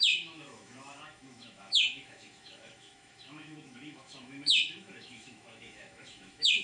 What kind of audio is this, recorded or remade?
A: remade